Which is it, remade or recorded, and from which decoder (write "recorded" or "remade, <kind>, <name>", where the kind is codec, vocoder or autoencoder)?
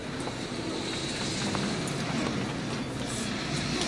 recorded